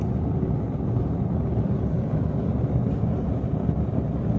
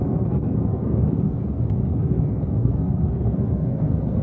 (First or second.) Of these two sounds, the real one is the first